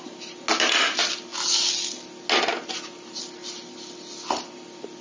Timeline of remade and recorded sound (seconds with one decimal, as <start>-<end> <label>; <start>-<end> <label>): 0.0-5.0 recorded